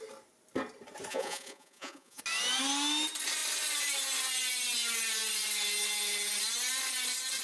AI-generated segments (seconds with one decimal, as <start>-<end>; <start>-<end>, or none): 1.1-2.2